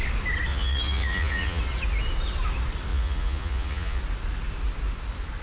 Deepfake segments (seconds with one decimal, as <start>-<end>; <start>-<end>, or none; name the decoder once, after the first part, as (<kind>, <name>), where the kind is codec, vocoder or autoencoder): 0.5-1.6 (vocoder, Vocos); 2.9-4.0